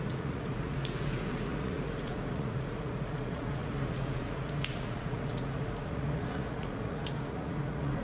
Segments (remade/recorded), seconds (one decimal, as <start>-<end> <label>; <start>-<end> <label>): 0.0-8.0 remade